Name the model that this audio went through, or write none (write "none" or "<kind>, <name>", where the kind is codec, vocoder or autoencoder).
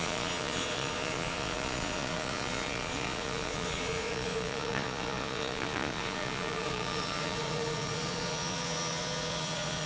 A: vocoder, Vocos